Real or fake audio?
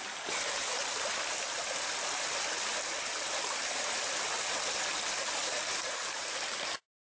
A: real